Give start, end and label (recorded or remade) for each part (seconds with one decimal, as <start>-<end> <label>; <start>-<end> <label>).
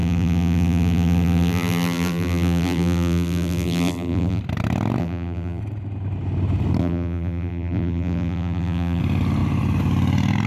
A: 0.0-4.4 remade; 4.4-5.0 recorded; 5.0-5.6 remade; 5.6-6.8 recorded; 6.8-9.0 remade; 9.0-10.5 recorded